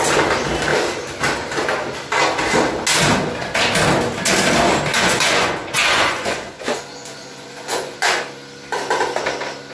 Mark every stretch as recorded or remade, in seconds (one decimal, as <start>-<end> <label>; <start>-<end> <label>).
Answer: 0.0-4.9 recorded; 4.9-8.2 remade; 8.2-9.7 recorded